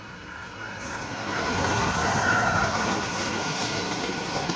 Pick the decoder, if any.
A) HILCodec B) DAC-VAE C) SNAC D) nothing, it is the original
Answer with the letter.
C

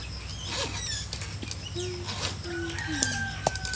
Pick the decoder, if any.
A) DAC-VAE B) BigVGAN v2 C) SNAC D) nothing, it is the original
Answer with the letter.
D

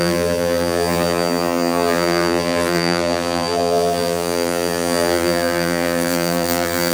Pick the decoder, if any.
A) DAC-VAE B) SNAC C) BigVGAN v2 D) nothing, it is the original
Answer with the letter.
C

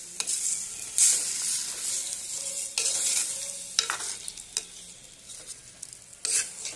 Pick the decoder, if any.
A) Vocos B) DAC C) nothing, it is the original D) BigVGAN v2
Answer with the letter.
C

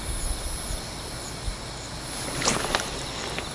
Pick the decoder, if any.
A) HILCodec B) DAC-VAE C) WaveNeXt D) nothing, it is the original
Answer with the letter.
D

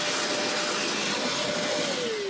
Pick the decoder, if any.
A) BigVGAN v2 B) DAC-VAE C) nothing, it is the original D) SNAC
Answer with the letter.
C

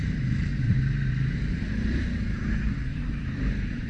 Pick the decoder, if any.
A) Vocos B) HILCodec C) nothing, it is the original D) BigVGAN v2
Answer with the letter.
D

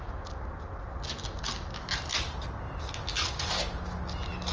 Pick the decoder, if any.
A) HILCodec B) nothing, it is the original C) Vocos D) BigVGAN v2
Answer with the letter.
B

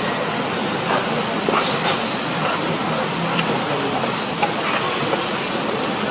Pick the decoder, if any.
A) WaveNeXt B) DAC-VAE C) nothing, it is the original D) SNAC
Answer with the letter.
C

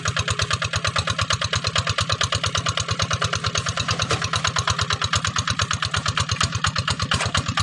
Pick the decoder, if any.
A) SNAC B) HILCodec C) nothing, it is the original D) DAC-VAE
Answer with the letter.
C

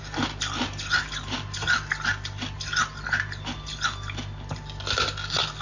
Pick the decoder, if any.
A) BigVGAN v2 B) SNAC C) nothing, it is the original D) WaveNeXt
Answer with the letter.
C